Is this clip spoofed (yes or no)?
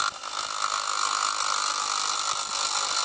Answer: no